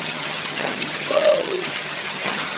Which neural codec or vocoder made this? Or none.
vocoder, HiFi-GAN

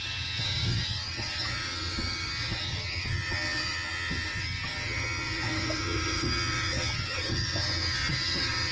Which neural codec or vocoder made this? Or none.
vocoder, HiFi-GAN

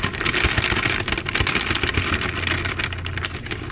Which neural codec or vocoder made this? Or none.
none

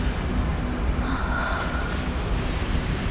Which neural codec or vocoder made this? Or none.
none